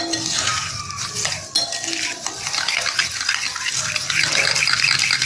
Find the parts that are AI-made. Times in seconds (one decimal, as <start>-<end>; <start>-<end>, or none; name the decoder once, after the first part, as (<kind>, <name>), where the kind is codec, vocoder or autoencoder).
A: none